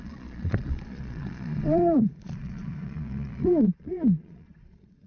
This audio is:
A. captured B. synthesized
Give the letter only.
B